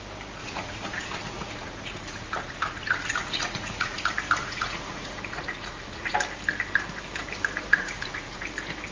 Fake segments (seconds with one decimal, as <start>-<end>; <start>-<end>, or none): 0.4-4.0; 4.4-6.1; 7.7-8.4